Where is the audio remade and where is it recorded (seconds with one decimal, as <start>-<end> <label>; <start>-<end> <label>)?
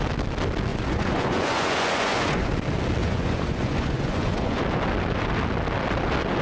0.0-0.7 recorded; 0.7-2.5 remade; 2.5-3.0 recorded; 3.0-4.6 remade; 4.6-6.4 recorded